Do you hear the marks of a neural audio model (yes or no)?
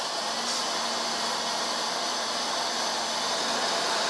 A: no